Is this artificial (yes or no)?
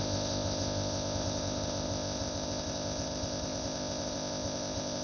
yes